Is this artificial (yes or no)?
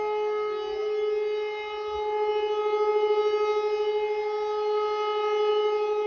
no